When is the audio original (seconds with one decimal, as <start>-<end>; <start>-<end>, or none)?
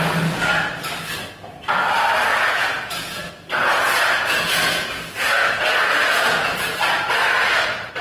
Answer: 0.0-2.3; 7.1-8.0